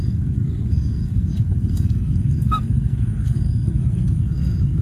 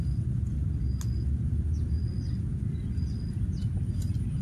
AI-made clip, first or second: first